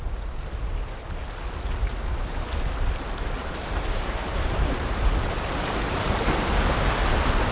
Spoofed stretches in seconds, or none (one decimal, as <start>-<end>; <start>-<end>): 3.4-6.5